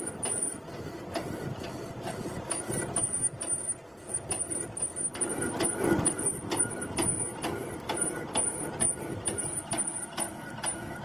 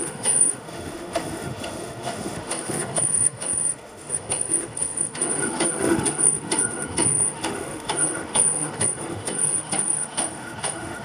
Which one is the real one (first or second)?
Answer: first